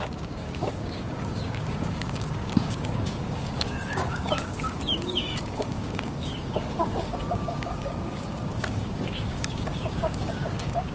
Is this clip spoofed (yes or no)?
yes